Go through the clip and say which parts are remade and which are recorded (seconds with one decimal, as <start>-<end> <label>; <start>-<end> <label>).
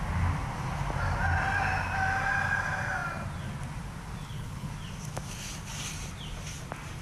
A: 0.0-4.2 recorded; 4.2-4.7 remade; 4.7-7.0 recorded